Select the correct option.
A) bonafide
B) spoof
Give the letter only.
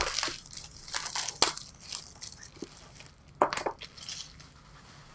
A